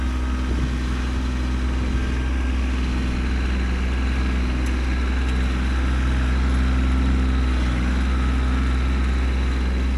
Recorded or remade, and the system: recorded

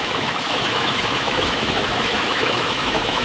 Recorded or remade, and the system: remade, autoencoder, DAC-VAE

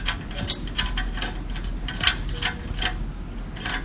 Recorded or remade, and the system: recorded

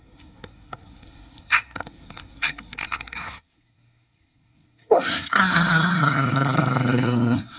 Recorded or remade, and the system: remade, codec, SNAC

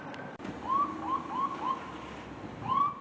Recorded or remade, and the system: recorded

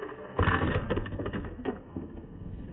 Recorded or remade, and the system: remade, codec, SNAC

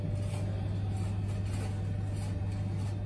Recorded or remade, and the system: recorded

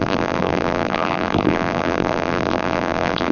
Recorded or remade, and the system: remade, vocoder, BigVGAN v2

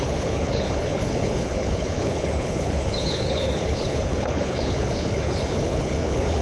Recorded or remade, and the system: remade, codec, HILCodec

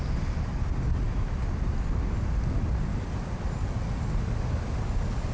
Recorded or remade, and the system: recorded